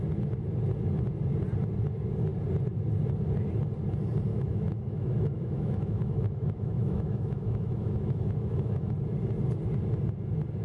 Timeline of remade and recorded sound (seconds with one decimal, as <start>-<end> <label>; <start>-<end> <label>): 0.0-4.3 recorded; 4.3-8.9 remade; 8.9-10.6 recorded